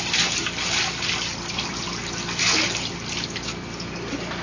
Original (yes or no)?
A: yes